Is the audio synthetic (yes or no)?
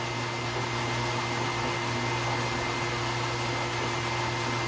no